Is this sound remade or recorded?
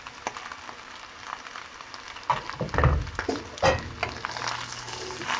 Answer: recorded